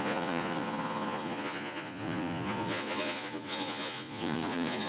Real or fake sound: fake